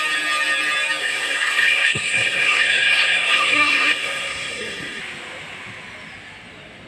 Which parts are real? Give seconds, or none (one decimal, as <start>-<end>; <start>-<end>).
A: 0.0-1.0; 5.0-6.9